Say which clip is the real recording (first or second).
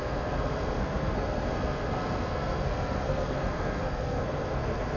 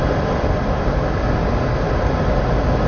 second